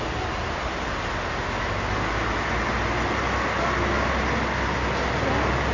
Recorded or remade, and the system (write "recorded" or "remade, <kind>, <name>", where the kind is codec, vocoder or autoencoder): recorded